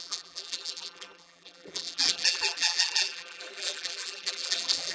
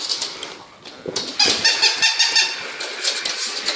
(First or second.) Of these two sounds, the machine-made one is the first